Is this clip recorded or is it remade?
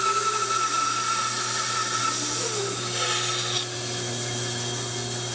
recorded